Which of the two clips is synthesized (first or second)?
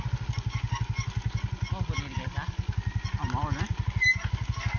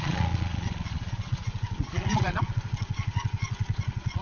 second